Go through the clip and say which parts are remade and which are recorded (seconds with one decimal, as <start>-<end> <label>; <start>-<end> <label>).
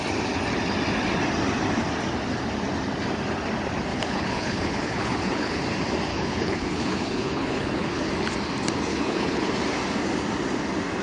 0.0-3.9 recorded; 3.9-5.6 remade; 5.6-6.1 recorded; 6.1-8.1 remade; 8.1-8.9 recorded; 8.9-9.5 remade; 9.5-11.0 recorded